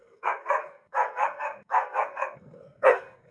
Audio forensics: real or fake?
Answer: fake